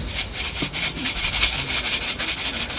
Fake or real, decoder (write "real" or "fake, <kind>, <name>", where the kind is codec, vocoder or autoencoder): real